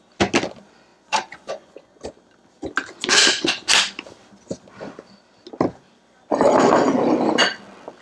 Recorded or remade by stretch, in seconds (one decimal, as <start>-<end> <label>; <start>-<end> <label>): 0.0-0.9 recorded; 0.9-2.0 remade; 2.0-8.0 recorded